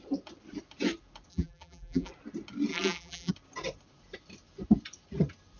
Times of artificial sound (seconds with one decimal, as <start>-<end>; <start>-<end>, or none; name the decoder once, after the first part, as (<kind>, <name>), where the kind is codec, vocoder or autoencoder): 1.3-2.1 (vocoder, BigVGAN v2); 2.7-3.3

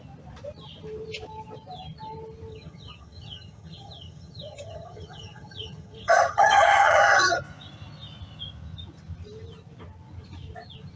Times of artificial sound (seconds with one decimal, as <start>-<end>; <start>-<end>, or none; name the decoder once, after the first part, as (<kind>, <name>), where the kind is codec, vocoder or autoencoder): 2.5-7.4 (vocoder, HiFi-GAN)

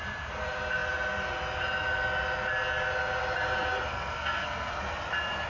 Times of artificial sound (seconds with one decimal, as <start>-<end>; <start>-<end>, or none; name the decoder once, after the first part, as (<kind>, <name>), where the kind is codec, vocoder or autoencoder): 3.9-4.8 (codec, SNAC)

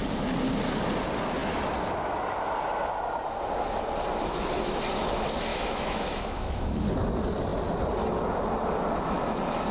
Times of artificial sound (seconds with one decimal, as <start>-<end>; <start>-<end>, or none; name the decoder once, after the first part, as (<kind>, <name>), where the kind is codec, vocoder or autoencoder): 5.5-6.7 (autoencoder, DAC-VAE)

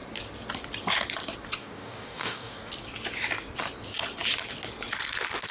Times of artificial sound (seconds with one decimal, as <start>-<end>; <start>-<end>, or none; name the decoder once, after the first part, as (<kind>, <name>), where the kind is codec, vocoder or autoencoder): 1.6-2.7 (codec, DAC)

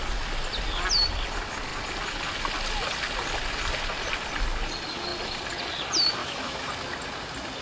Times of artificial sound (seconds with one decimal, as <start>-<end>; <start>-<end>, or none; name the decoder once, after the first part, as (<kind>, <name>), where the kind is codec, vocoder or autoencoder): 6.2-6.7 (autoencoder, DAC-VAE)

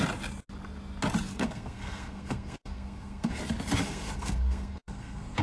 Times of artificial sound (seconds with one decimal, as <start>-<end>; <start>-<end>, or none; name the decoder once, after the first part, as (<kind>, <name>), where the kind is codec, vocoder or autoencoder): 1.3-3.4 (codec, SNAC); 3.8-5.4

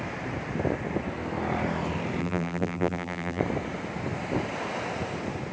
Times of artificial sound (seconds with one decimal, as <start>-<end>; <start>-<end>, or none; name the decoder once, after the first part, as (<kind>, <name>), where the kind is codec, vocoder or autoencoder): 2.2-3.4 (vocoder, BigVGAN v2)